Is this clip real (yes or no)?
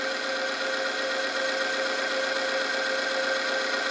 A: yes